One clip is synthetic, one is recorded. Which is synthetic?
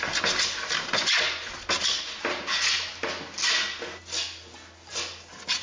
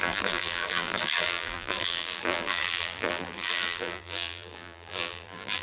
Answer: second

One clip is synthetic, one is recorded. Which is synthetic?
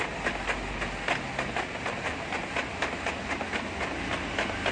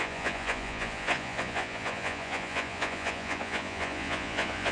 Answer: second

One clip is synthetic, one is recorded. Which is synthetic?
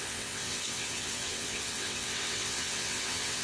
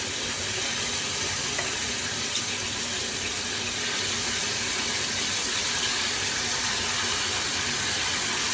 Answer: first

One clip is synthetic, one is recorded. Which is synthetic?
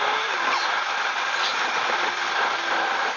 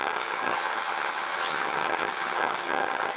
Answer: second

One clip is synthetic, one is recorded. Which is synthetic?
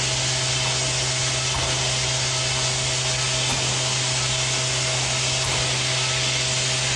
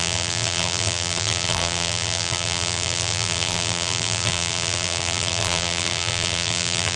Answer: second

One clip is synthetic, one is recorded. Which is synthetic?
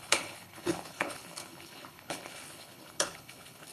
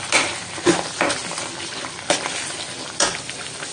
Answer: first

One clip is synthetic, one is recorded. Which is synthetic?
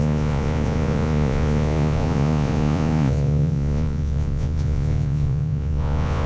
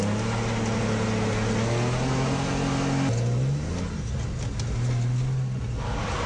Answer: first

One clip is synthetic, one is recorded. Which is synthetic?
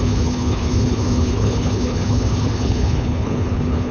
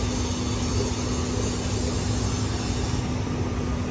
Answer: first